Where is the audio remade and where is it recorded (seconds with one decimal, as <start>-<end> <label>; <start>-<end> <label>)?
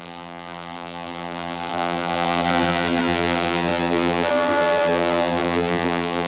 0.0-6.3 remade